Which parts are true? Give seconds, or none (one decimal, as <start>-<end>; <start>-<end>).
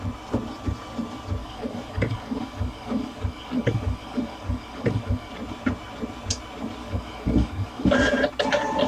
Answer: 0.0-1.4; 5.3-6.8; 7.9-8.9